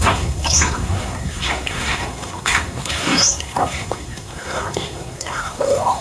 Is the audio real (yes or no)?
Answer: no